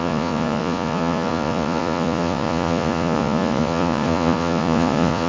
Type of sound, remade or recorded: remade